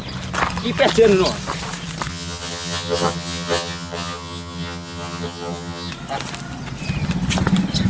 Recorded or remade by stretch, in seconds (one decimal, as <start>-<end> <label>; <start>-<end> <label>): 0.0-2.1 recorded; 2.1-5.9 remade; 5.9-7.9 recorded